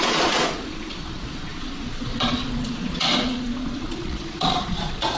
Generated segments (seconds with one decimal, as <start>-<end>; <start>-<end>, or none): 0.0-5.2